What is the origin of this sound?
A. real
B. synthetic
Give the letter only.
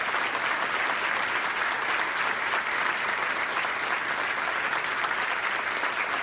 A